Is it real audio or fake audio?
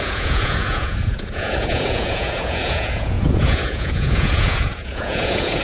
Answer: fake